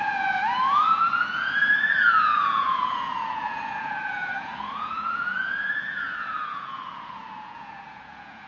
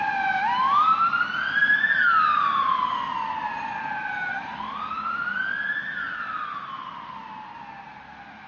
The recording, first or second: second